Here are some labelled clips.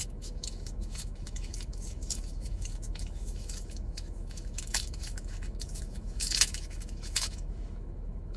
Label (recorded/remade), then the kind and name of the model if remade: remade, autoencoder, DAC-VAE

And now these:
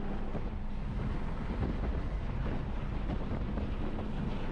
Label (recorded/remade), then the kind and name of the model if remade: recorded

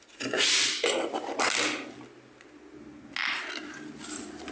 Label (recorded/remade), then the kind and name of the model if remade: recorded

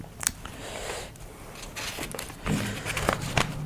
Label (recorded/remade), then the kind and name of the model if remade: recorded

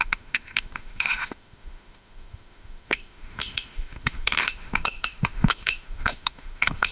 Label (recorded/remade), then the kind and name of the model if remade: remade, autoencoder, DAC-VAE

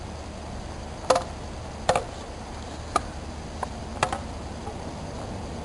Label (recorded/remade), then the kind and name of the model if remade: recorded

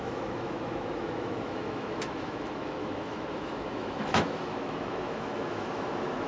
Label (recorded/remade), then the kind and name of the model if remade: remade, autoencoder, DAC-VAE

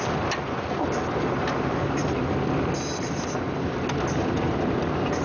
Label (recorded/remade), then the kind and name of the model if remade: recorded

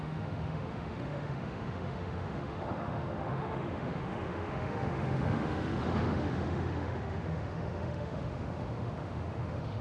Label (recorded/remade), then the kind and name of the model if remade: remade, autoencoder, DAC-VAE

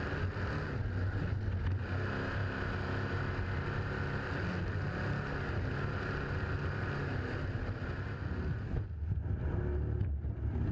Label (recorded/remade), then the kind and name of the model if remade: recorded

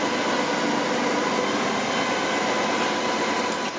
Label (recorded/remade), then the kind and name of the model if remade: recorded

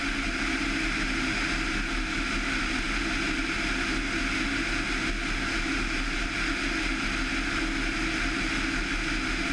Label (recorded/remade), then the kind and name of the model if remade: recorded